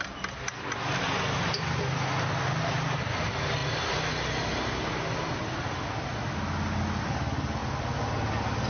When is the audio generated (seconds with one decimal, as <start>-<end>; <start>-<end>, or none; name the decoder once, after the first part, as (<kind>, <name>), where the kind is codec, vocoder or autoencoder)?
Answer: none